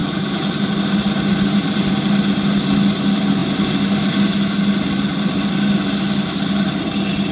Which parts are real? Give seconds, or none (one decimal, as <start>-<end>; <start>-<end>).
0.0-7.3